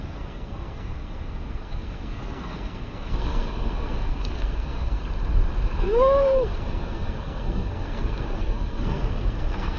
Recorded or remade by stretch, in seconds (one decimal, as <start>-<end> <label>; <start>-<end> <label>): 0.0-5.0 remade; 5.0-5.8 recorded; 5.8-9.8 remade